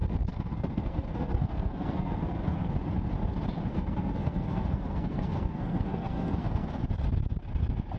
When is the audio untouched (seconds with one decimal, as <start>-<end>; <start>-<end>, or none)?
2.7-3.7; 6.9-8.0